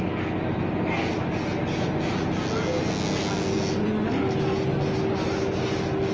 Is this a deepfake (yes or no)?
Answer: no